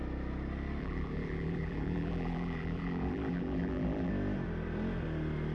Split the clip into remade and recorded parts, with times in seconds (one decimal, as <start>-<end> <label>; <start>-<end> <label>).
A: 0.0-0.8 recorded; 0.8-4.1 remade; 4.1-5.5 recorded